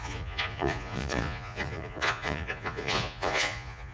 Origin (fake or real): fake